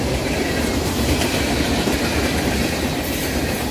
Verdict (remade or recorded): remade